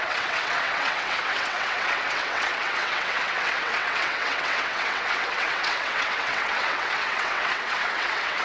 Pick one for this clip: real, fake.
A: fake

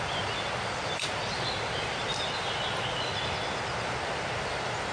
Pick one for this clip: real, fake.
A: real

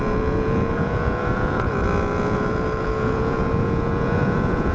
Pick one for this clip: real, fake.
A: fake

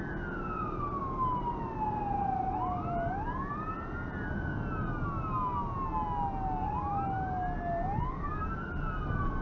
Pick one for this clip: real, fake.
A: real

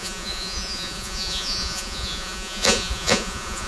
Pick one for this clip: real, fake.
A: fake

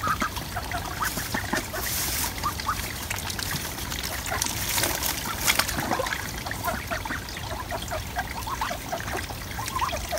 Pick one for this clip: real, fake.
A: real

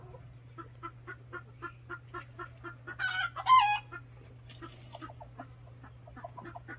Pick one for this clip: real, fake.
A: real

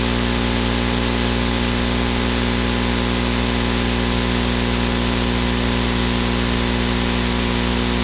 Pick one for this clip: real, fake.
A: real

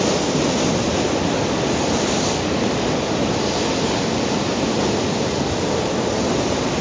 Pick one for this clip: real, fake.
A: real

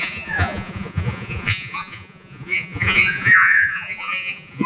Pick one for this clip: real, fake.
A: fake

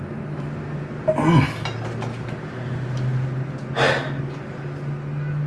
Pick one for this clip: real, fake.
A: real